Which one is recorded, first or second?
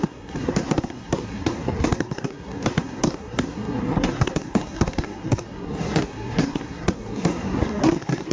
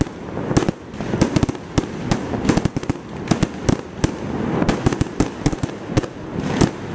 second